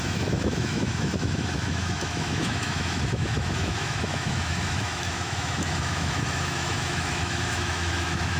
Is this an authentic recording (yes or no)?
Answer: no